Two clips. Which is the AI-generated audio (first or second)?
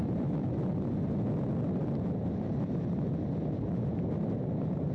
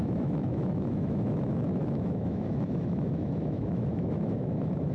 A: second